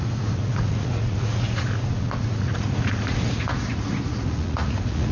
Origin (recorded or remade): remade